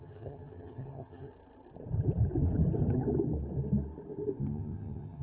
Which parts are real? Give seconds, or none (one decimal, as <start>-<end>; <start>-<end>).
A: 1.3-4.4